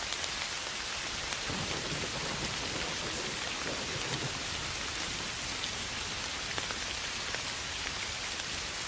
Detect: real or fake real